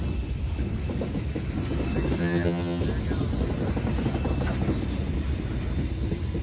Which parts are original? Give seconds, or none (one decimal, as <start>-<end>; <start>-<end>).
0.0-2.2; 2.8-6.4